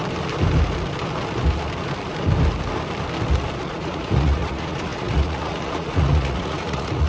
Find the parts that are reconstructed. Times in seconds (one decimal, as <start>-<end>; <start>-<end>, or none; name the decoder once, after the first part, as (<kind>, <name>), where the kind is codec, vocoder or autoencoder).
3.6-7.1 (vocoder, Vocos)